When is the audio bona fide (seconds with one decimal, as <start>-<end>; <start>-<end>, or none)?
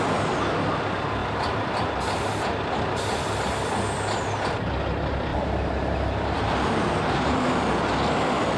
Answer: 0.0-1.2; 3.1-5.3; 7.8-8.6